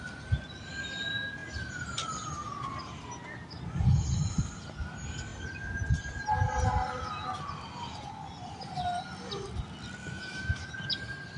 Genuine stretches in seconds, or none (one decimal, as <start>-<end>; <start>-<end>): 0.0-10.0; 10.7-11.4